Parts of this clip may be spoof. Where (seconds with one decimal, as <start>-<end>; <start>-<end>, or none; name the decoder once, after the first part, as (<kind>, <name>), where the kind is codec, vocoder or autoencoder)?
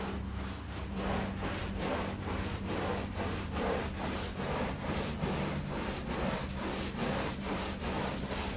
7.0-7.6 (vocoder, BigVGAN v2)